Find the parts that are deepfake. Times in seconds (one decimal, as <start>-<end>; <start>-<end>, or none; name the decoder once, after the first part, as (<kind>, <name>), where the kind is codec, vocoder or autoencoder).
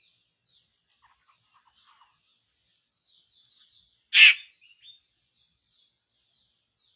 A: none